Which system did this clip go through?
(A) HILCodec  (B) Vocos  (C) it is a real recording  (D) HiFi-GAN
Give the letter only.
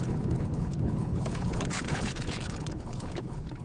A